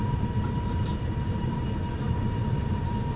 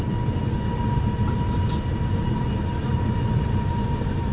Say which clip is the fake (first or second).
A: first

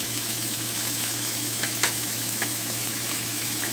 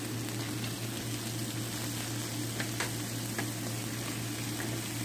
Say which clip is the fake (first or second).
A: first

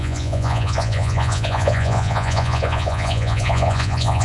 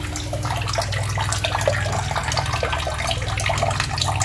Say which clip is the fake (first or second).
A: first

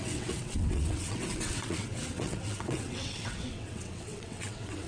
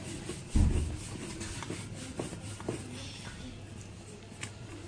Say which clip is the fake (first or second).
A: first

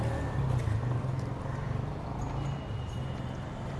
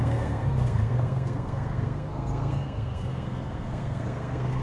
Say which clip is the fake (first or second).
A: second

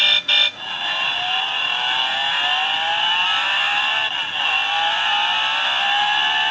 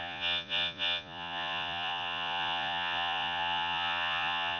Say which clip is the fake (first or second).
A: second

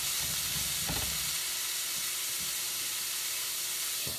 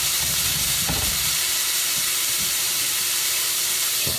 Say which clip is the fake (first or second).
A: second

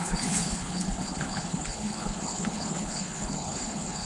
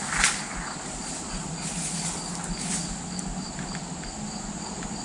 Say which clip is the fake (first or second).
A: first